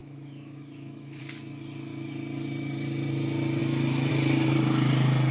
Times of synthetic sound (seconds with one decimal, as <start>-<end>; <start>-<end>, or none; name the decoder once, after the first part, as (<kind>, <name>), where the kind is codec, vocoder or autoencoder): 0.0-1.2 (autoencoder, DAC-VAE)